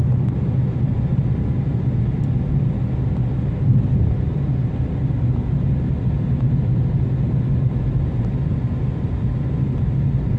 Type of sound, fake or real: real